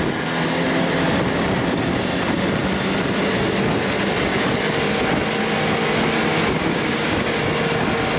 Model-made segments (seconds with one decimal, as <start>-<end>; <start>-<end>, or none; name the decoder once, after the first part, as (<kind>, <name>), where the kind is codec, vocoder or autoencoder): 6.3-7.4 (codec, DAC)